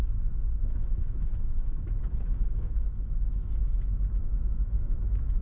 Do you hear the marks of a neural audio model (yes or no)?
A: yes